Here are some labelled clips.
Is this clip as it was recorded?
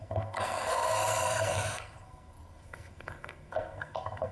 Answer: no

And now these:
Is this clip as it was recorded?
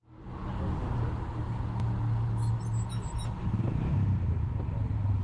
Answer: yes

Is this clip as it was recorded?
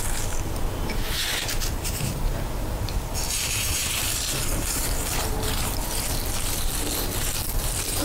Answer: no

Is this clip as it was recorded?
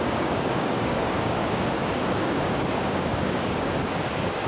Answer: no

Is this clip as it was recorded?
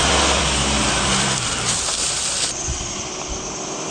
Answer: no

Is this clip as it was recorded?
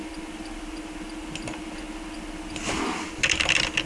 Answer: yes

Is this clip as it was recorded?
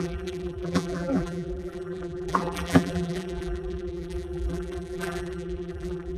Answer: no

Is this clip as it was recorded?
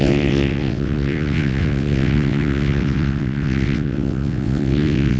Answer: no